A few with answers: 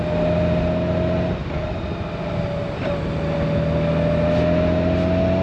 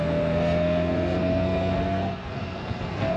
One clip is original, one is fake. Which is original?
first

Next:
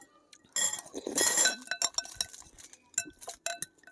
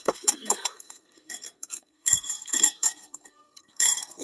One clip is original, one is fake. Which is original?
first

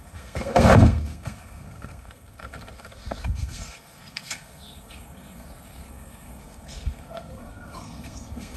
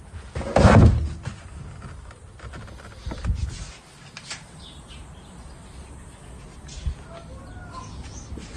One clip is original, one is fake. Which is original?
second